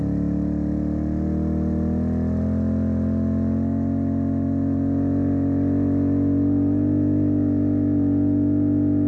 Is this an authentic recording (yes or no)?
yes